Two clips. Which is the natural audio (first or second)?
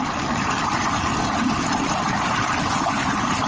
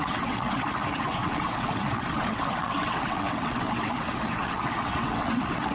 first